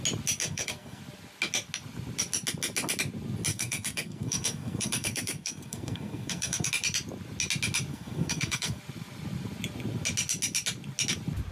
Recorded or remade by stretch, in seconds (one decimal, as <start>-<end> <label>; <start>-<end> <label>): 0.0-0.4 recorded; 0.4-1.0 remade; 1.0-3.5 recorded; 3.5-6.7 remade; 6.7-7.9 recorded; 7.9-8.8 remade; 8.8-11.5 recorded